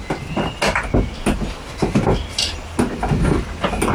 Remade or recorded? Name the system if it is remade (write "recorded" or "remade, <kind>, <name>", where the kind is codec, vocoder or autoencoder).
recorded